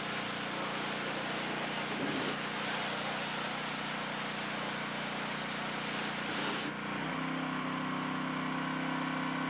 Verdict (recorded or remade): recorded